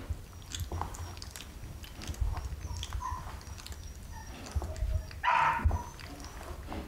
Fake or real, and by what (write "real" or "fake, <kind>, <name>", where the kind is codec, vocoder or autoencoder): real